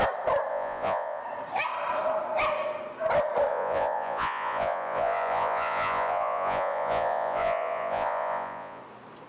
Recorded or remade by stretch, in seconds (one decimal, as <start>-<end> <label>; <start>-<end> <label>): 0.0-0.5 recorded; 0.5-1.2 remade; 1.2-3.5 recorded; 3.5-8.8 remade; 8.8-9.3 recorded